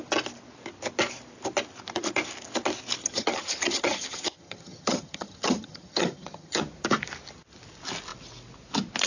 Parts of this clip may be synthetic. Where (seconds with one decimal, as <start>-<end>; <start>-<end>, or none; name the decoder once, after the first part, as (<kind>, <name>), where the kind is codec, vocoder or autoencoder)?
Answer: 3.0-6.6 (vocoder, HiFi-GAN)